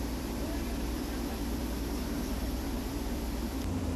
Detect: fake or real fake